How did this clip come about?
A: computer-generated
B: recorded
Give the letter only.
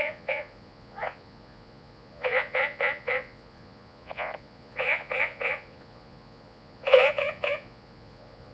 A